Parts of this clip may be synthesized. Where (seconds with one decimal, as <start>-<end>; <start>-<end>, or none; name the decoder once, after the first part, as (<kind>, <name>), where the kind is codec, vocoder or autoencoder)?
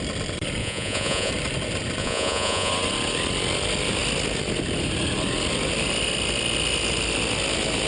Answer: 0.6-1.3 (vocoder, Vocos); 2.0-2.7